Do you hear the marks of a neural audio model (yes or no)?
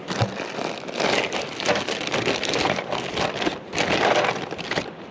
no